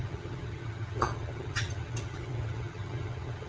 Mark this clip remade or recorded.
remade